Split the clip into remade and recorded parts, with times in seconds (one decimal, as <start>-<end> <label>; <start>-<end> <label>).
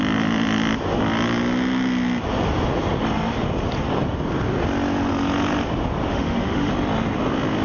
0.0-6.1 recorded; 6.1-6.7 remade; 6.7-7.6 recorded